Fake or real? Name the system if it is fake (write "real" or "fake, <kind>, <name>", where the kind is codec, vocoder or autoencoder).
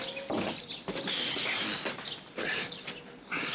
real